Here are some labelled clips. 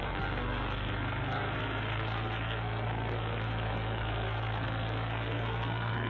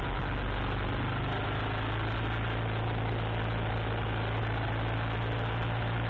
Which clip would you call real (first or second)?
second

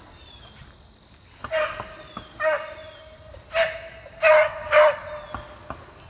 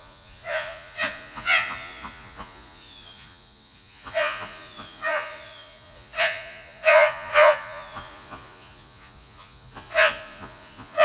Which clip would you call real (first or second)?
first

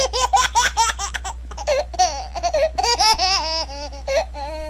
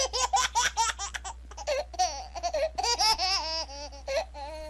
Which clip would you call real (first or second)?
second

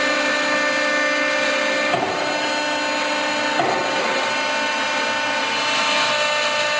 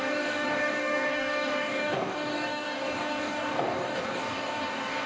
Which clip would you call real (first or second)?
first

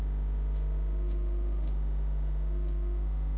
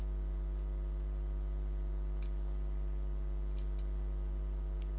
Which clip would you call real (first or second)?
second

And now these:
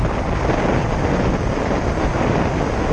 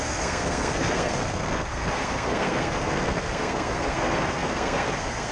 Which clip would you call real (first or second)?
first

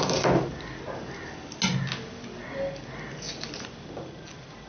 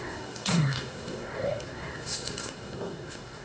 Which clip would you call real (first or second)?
first